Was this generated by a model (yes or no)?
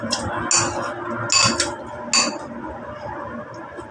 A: no